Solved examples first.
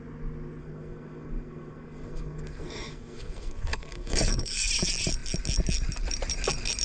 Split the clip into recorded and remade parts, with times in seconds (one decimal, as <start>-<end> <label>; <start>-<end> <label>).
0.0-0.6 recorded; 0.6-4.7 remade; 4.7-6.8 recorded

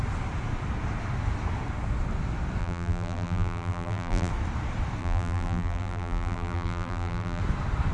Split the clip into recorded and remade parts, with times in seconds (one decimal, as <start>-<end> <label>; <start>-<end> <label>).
0.0-2.6 recorded; 2.6-4.3 remade; 4.3-5.0 recorded; 5.0-7.4 remade; 7.4-7.9 recorded

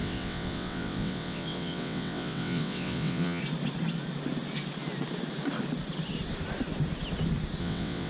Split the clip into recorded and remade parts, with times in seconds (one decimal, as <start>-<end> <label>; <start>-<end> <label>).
0.0-3.4 remade; 3.4-7.6 recorded; 7.6-8.1 remade

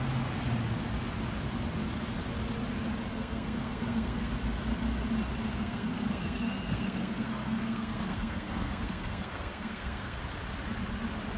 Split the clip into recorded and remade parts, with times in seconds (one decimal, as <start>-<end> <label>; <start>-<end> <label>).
0.0-3.1 recorded; 3.1-4.3 remade; 4.3-5.5 recorded; 5.5-10.2 remade; 10.2-11.4 recorded

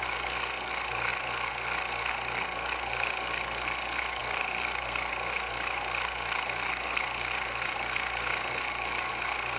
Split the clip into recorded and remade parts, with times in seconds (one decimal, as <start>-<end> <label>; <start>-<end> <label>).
0.0-9.6 remade

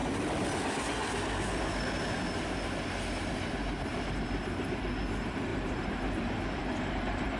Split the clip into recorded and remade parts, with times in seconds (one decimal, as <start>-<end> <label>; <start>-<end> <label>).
0.0-1.6 remade; 1.6-5.5 recorded; 5.5-7.4 remade

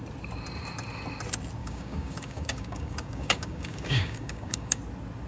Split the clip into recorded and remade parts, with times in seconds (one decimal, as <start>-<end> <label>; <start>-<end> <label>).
0.0-1.6 recorded; 1.6-4.8 remade; 4.8-5.3 recorded

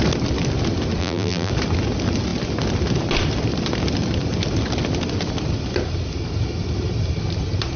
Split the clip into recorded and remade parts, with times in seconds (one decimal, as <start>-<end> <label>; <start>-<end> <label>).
0.0-1.0 recorded; 1.0-1.5 remade; 1.5-7.8 recorded